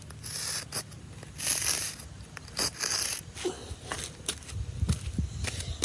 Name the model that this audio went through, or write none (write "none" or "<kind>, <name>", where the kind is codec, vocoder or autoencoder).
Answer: none